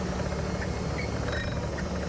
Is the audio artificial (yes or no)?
no